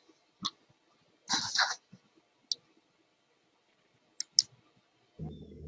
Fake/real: real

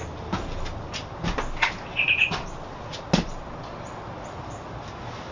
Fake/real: real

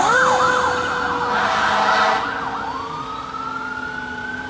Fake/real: real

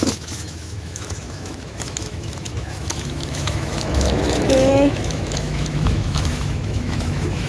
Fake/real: fake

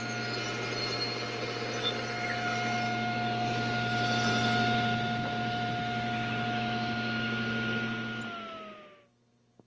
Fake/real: real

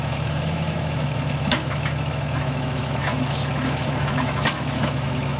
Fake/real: fake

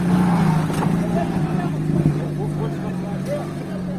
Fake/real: real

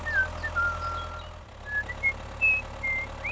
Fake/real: real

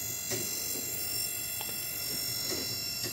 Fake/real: real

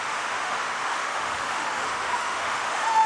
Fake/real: fake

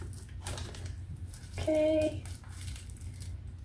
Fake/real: real